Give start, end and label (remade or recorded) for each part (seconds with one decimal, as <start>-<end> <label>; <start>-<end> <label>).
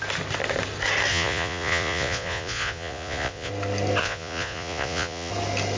0.0-1.1 recorded; 1.1-3.5 remade; 3.5-4.0 recorded; 4.0-5.3 remade; 5.3-5.8 recorded